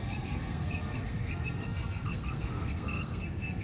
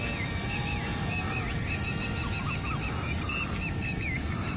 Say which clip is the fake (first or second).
first